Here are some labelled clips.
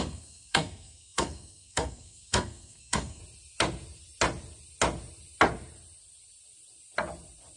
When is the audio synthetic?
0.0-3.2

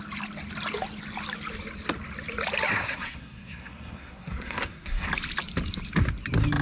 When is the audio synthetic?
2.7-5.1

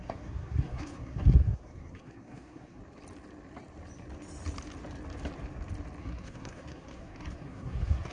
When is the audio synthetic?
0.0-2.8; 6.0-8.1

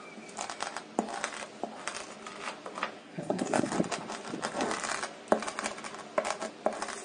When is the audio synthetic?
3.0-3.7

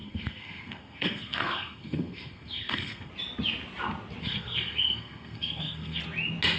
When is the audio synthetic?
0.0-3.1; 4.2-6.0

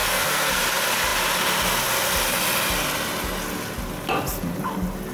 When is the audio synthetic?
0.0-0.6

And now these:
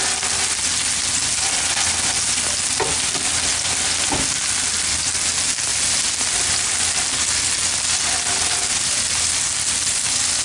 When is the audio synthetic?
none